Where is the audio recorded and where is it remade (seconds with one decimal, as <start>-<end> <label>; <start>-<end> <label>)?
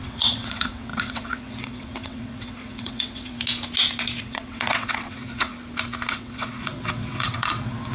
0.0-3.3 remade; 3.3-4.2 recorded; 4.2-5.5 remade; 5.5-6.1 recorded; 6.1-7.9 remade